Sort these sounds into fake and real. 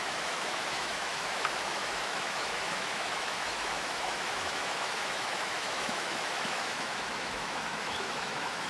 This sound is fake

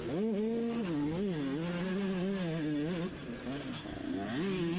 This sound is real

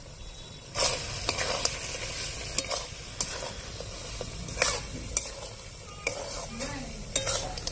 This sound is real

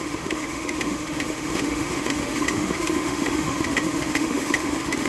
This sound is fake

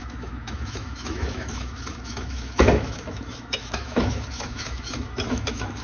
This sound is fake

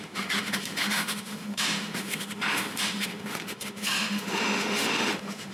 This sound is fake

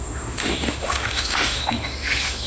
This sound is fake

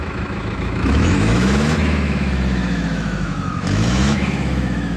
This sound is fake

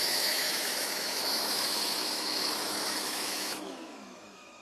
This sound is fake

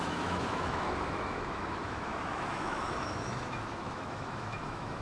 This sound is fake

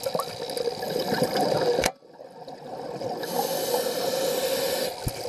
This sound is real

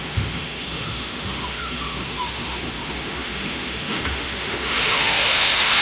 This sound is fake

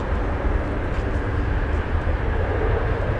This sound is real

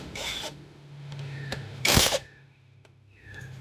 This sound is fake